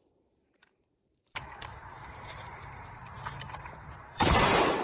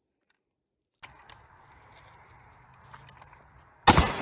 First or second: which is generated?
first